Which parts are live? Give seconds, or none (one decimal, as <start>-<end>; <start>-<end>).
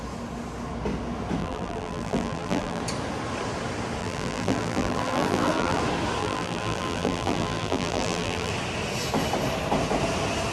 0.0-1.4; 2.8-4.0; 5.8-6.2; 8.5-10.5